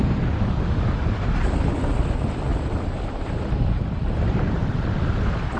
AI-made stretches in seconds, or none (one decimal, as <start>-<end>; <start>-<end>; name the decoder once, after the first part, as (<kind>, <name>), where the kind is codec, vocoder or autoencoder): 2.5-4.9 (vocoder, BigVGAN v2)